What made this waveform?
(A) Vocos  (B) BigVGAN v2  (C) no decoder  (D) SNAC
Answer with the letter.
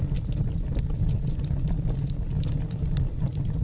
C